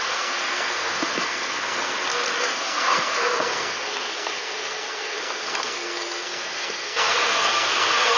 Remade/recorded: remade